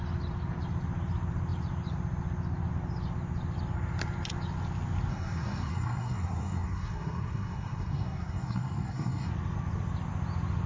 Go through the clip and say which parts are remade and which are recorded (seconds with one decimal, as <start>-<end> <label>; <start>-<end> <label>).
0.0-5.1 recorded; 5.1-9.3 remade; 9.3-10.7 recorded